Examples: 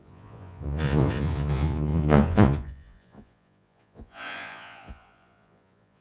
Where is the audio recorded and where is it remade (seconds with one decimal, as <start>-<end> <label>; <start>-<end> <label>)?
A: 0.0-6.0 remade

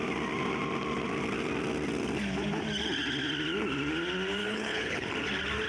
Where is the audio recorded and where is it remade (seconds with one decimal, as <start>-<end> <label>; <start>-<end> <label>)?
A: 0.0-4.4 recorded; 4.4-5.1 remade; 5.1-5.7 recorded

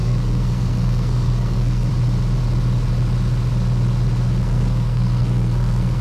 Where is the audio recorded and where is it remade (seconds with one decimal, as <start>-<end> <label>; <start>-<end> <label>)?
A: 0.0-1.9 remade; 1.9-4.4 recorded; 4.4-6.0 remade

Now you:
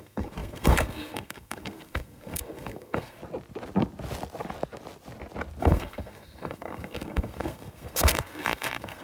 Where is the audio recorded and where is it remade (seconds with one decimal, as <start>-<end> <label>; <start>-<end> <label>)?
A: 0.0-3.2 remade; 3.2-5.6 recorded; 5.6-9.0 remade

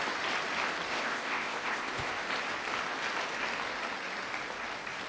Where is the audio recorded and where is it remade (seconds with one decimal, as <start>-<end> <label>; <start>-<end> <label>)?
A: 0.0-0.9 recorded; 0.9-2.1 remade; 2.1-5.1 recorded

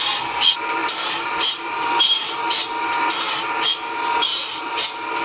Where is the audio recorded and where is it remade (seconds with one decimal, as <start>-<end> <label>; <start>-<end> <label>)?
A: 0.0-0.8 recorded; 0.8-2.5 remade; 2.5-4.3 recorded; 4.3-4.8 remade; 4.8-5.2 recorded

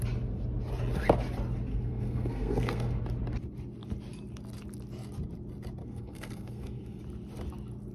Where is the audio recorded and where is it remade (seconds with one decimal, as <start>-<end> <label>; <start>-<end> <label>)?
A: 0.0-1.7 recorded; 1.7-3.0 remade; 3.0-5.8 recorded; 5.8-7.0 remade; 7.0-7.9 recorded

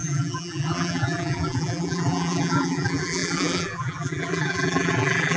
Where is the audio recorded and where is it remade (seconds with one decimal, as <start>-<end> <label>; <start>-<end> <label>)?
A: 0.0-5.4 remade